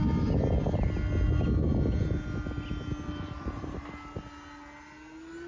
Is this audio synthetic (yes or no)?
no